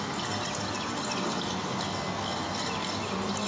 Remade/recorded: recorded